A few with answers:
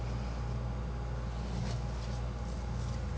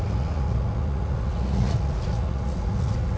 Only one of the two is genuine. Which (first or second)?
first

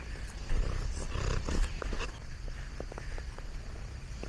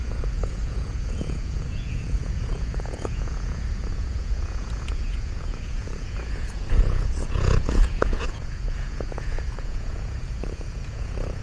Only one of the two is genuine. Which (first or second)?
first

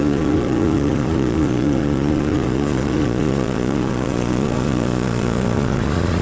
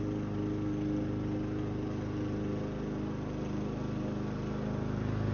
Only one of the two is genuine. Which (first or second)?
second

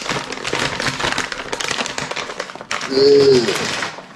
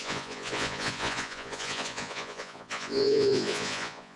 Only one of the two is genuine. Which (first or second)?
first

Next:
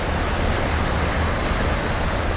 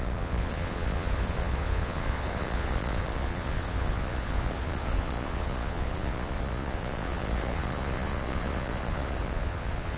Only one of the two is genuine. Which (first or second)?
first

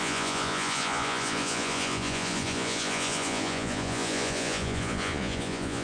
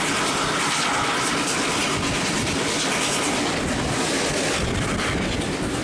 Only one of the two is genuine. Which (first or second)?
second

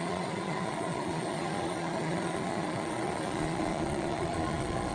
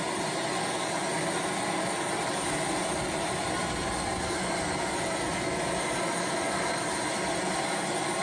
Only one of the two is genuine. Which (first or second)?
second